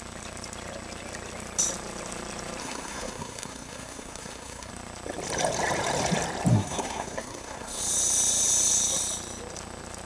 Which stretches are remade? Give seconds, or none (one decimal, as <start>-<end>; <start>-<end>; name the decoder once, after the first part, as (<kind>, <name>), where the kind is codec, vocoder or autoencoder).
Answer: 2.6-4.7 (codec, SNAC); 6.5-7.8